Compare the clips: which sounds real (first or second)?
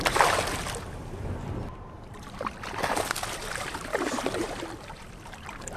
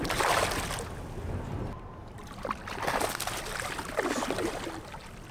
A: second